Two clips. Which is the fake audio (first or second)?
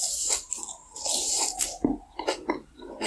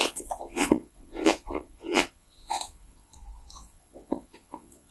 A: second